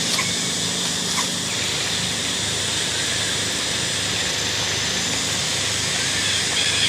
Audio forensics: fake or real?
real